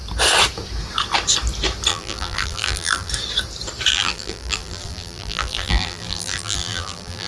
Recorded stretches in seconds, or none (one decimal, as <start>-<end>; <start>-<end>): 0.0-1.9; 3.1-3.9